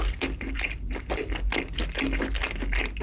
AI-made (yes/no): no